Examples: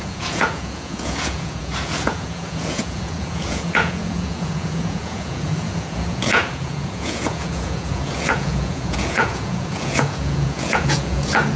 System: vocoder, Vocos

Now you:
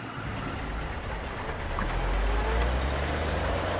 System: none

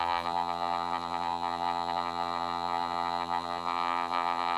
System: vocoder, BigVGAN v2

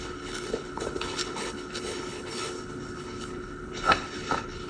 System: codec, HILCodec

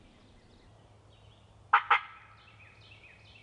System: none